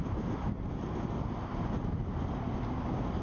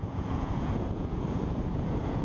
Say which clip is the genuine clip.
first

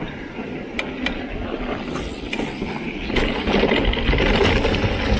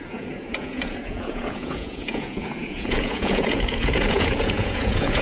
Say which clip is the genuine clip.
first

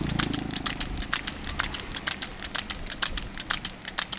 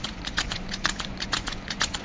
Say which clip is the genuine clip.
first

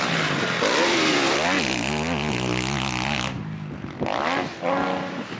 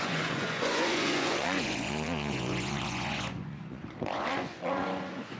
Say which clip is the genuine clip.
first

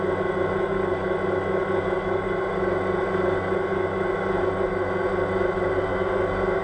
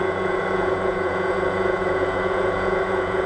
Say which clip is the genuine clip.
first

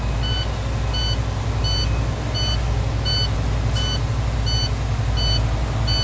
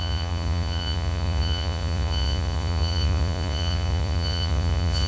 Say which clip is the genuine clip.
first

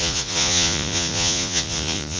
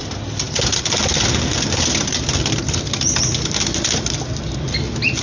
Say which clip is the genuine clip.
second